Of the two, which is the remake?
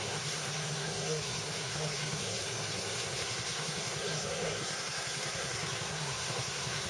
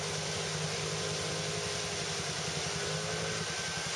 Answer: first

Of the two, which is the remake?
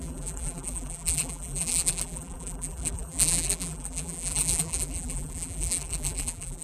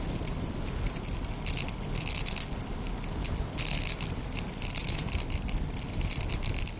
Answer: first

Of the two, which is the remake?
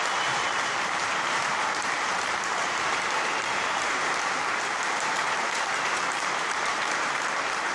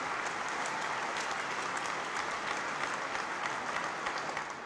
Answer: first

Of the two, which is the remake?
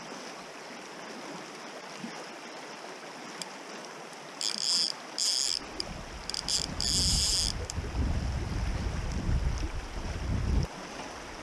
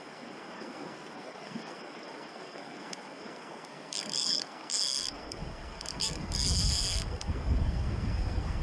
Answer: second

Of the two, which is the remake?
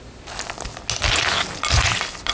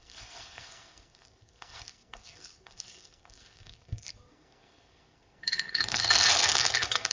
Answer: second